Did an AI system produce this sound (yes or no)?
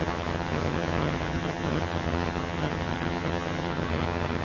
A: yes